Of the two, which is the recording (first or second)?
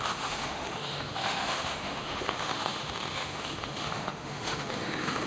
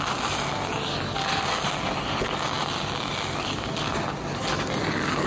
second